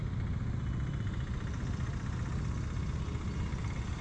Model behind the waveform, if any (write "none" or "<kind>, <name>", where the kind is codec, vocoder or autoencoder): none